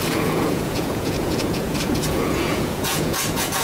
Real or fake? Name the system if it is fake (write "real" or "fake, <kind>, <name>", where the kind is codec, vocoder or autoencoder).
fake, vocoder, Vocos